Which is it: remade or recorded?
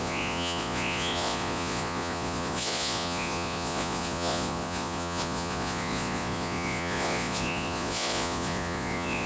remade